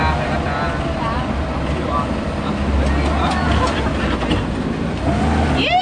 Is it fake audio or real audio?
real